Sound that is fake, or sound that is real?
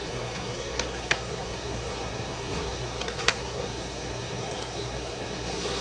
fake